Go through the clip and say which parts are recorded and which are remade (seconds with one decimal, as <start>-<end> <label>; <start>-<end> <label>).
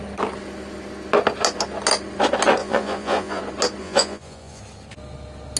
0.0-2.6 recorded; 2.6-3.4 remade; 3.4-3.8 recorded; 3.8-4.6 remade; 4.6-5.6 recorded